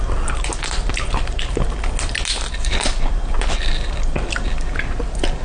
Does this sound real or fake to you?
real